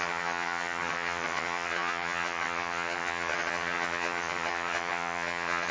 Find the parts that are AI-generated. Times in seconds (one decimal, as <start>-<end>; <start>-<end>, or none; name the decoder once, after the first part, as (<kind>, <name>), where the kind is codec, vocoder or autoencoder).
0.0-5.7 (vocoder, HiFi-GAN)